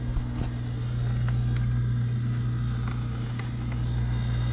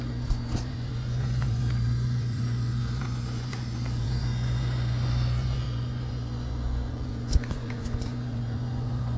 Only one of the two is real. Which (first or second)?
first